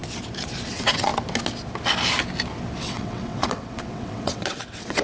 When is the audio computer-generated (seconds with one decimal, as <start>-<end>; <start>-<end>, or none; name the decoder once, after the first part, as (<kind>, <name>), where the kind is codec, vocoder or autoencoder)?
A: 0.7-1.1 (vocoder, WaveNeXt); 2.8-5.0